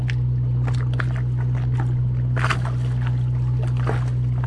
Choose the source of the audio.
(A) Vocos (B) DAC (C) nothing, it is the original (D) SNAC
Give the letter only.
C